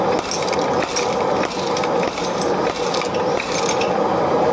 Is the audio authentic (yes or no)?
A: yes